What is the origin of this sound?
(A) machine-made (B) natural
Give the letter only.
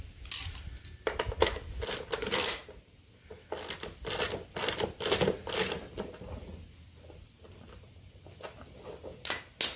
B